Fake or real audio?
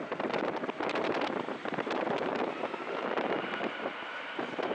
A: fake